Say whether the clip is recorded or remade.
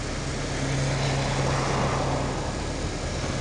recorded